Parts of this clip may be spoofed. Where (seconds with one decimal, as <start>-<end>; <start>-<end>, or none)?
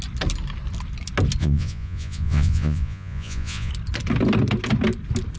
1.4-3.7